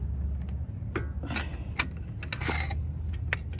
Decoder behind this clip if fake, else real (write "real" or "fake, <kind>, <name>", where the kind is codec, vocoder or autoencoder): real